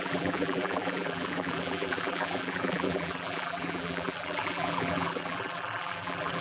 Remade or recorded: remade